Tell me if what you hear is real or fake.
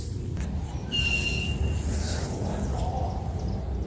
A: real